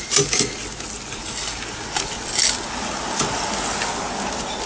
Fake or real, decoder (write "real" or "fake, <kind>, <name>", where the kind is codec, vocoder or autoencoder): real